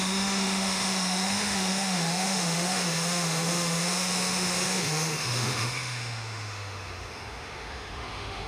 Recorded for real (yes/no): no